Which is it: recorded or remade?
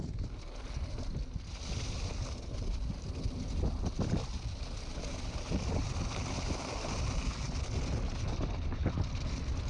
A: recorded